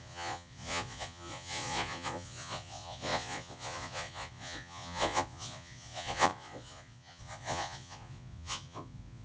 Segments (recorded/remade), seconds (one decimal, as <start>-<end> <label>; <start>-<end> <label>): 0.0-9.2 remade